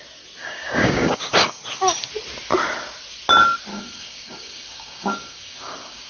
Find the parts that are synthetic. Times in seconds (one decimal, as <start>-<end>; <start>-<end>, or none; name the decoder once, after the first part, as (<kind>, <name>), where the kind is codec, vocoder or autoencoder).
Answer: 0.4-1.6 (codec, DAC); 3.7-6.1